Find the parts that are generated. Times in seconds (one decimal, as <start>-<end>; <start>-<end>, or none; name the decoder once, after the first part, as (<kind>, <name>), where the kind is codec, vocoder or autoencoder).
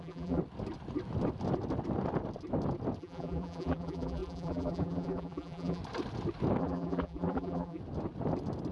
0.0-0.4 (vocoder, BigVGAN v2); 3.0-5.8; 6.6-7.8